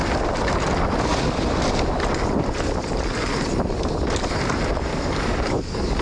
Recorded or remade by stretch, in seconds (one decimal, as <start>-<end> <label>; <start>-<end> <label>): 0.0-4.9 recorded; 4.9-6.0 remade